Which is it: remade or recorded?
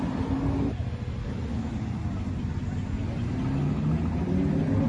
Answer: recorded